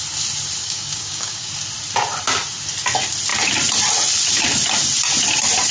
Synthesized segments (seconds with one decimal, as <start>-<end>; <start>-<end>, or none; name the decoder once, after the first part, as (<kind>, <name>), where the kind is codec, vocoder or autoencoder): 0.6-1.5 (codec, DAC)

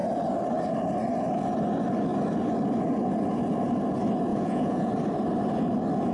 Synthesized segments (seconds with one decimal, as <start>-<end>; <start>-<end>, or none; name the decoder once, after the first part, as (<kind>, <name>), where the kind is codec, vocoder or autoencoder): 4.3-4.9 (vocoder, Vocos)

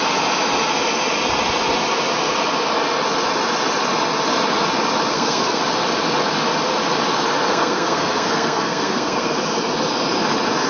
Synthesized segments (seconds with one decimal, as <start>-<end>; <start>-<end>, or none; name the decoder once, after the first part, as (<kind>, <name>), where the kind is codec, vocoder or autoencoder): 5.1-5.6 (codec, SNAC); 7.5-9.4